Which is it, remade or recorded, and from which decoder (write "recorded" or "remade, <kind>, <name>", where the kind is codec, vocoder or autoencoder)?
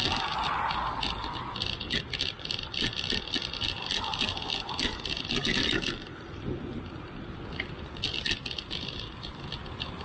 recorded